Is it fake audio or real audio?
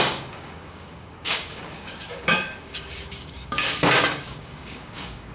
fake